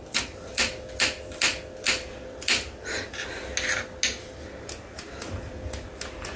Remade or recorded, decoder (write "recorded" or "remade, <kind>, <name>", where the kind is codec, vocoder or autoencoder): recorded